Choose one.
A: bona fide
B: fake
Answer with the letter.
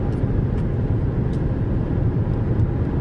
A